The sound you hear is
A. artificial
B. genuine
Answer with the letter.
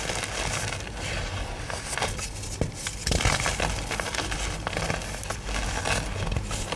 B